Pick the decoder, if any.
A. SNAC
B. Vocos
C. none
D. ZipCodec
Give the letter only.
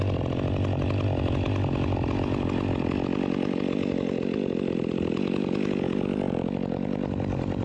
C